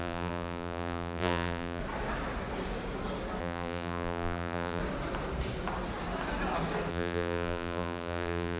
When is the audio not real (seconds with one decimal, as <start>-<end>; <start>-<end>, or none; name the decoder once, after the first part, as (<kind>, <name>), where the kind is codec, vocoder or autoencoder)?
0.0-1.8 (vocoder, BigVGAN v2); 3.4-4.8; 6.9-8.6